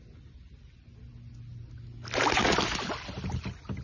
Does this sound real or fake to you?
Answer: real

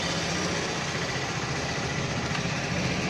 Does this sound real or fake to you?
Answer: real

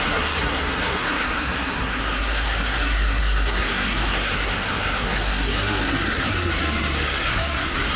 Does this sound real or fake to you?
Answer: fake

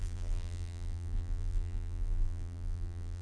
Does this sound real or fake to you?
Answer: fake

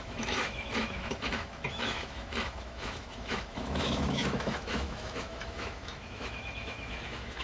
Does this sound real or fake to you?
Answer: fake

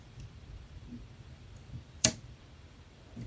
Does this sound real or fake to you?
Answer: fake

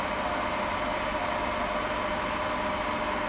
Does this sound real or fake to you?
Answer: real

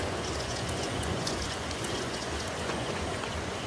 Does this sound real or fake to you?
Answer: fake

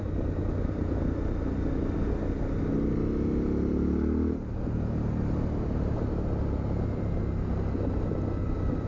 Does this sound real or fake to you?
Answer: real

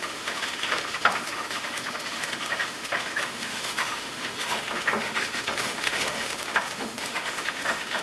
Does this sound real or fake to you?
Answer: fake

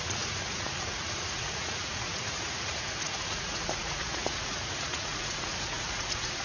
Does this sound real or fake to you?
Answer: fake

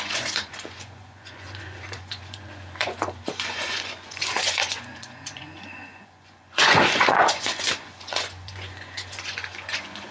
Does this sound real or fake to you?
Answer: fake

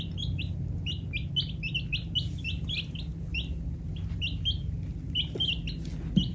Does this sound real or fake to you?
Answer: real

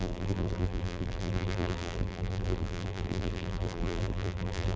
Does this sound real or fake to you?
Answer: fake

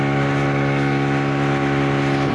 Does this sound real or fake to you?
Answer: real